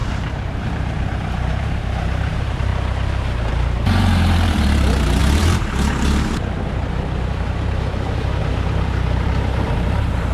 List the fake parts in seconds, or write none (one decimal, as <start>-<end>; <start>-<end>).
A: 0.0-2.7; 3.5-10.3